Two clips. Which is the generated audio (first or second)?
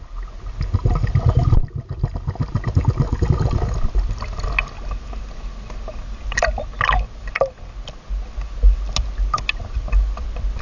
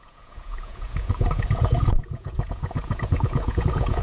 second